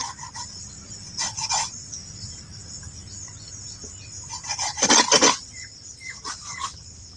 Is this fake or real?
real